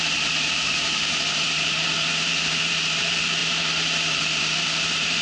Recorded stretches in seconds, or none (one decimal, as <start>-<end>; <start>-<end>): none